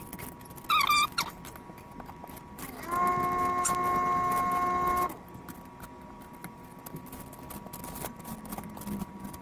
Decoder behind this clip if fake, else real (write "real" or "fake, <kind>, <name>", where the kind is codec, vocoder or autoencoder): real